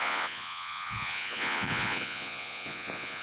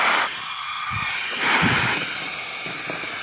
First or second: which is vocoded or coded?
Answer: first